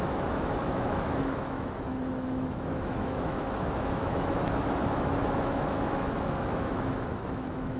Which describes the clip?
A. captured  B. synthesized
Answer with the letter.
B